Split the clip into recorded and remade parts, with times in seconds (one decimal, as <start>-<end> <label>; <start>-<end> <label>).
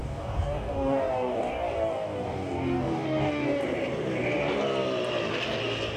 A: 0.0-3.6 remade; 3.6-6.0 recorded